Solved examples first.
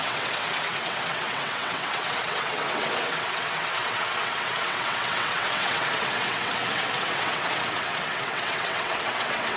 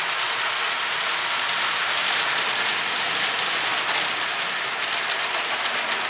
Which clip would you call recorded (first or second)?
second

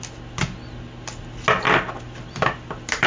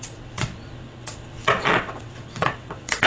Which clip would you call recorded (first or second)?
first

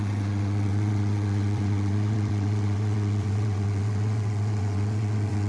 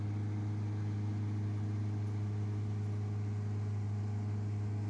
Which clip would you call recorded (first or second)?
second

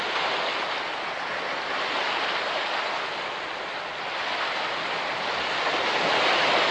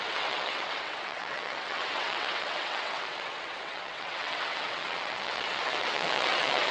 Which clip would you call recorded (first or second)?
first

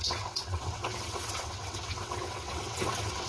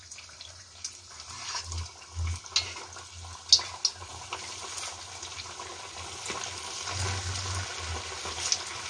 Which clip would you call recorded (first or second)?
second